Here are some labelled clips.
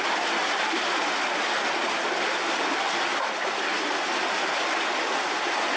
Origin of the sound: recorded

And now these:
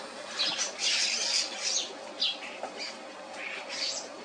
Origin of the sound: recorded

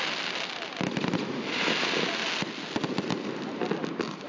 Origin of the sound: recorded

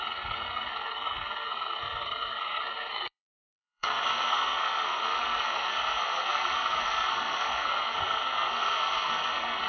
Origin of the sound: remade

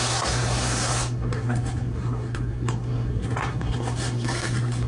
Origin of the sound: remade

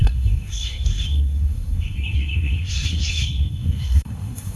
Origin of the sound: remade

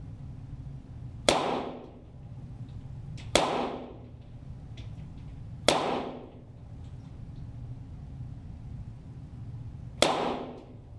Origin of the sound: recorded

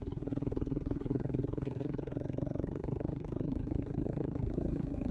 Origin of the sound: remade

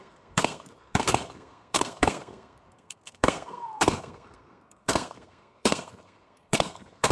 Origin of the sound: remade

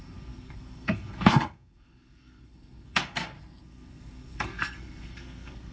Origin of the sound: remade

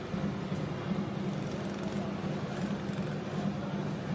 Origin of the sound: recorded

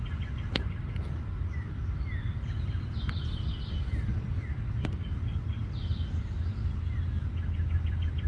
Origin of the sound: recorded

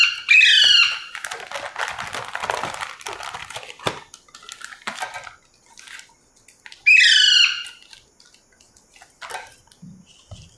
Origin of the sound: recorded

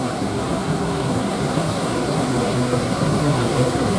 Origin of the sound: remade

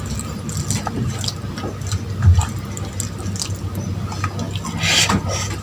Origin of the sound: recorded